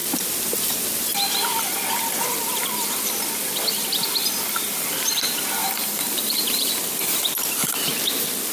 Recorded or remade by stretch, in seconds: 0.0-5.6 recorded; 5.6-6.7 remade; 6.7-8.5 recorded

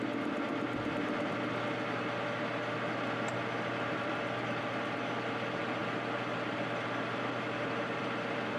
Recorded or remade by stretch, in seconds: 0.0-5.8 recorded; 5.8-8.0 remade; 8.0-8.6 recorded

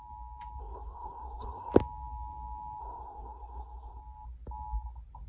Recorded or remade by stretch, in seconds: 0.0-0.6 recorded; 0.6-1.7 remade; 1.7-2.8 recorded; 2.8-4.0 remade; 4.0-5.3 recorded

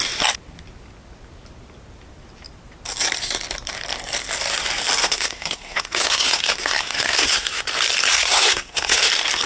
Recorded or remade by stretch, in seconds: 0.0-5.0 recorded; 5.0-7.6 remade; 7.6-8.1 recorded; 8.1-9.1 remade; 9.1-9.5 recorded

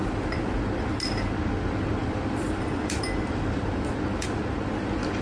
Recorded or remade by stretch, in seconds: 0.0-2.0 recorded; 2.0-4.2 remade; 4.2-5.2 recorded

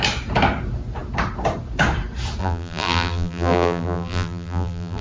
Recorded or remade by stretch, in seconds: 0.0-2.4 recorded; 2.4-5.0 remade

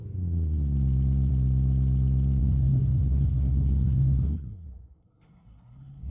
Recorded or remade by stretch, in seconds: 0.0-2.4 recorded; 2.4-6.1 remade

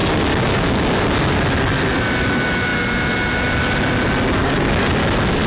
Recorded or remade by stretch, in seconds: 0.0-4.4 recorded; 4.4-4.9 remade; 4.9-5.5 recorded